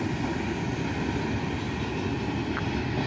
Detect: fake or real real